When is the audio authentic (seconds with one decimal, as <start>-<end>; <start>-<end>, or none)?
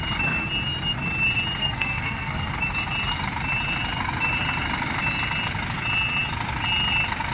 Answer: 0.0-1.6; 2.5-7.3